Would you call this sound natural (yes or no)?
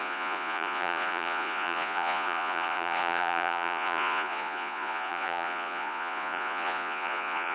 no